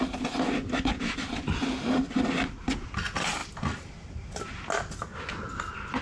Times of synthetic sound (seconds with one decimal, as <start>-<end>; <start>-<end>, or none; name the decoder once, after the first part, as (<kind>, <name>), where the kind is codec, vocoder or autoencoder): none